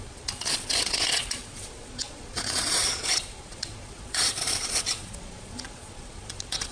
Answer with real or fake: fake